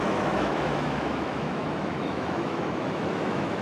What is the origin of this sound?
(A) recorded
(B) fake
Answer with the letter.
B